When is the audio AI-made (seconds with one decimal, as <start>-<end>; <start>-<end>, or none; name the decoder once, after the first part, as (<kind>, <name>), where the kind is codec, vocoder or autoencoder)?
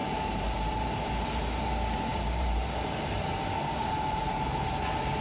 0.0-5.2 (vocoder, BigVGAN v2)